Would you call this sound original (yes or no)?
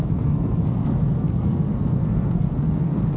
no